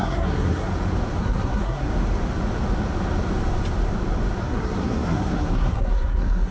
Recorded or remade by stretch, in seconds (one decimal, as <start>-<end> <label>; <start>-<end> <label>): 0.0-0.7 remade; 0.7-1.2 recorded; 1.2-1.9 remade; 1.9-4.4 recorded; 4.4-6.5 remade